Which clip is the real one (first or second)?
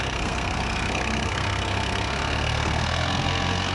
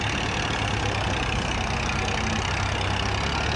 second